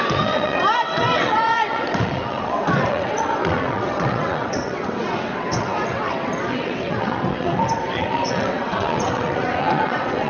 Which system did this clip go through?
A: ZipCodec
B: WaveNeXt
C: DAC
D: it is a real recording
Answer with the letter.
B